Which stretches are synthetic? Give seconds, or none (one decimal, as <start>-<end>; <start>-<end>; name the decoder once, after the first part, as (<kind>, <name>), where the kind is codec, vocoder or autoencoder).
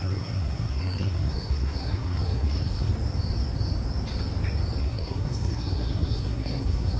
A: 0.0-2.9 (codec, SNAC); 4.8-7.0